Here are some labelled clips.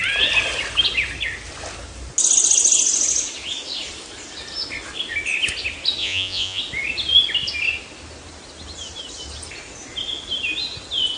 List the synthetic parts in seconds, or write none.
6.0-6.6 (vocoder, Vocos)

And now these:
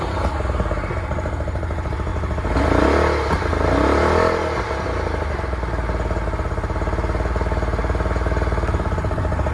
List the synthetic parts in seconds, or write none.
none